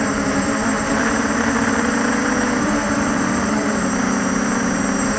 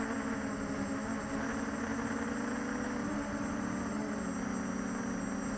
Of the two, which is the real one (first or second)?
second